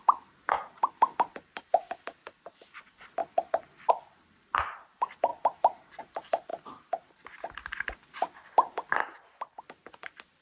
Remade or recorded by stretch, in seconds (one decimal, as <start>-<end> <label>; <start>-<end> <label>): 0.0-9.0 recorded; 9.0-9.6 remade; 9.6-10.4 recorded